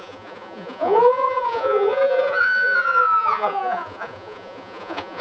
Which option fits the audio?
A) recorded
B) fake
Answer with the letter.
B